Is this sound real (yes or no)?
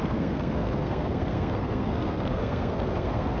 no